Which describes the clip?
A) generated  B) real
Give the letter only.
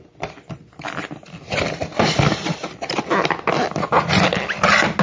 B